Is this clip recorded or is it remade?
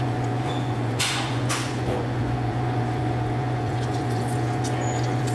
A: remade